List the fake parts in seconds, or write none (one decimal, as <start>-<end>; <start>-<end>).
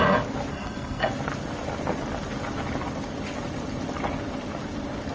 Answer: 0.5-1.1